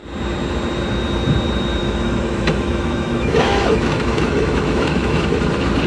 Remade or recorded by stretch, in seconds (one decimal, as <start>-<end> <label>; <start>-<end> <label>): 0.0-1.8 recorded; 1.8-5.3 remade; 5.3-5.9 recorded